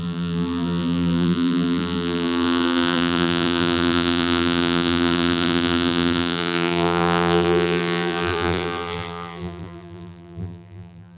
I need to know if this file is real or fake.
fake